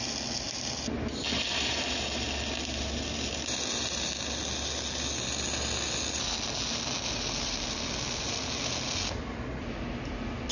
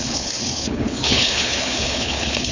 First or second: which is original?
first